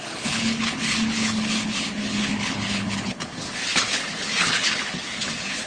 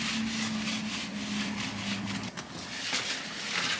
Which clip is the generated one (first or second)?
first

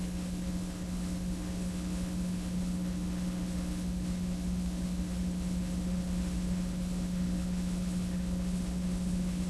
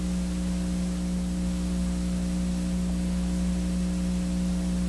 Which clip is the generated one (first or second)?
first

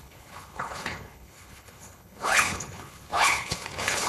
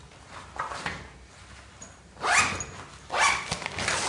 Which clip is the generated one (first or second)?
first